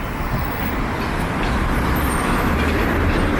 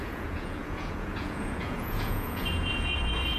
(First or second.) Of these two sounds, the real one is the first